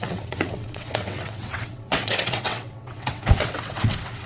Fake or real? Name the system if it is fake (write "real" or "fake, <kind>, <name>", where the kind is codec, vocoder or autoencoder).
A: fake, vocoder, WaveNeXt